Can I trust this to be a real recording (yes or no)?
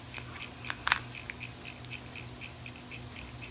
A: yes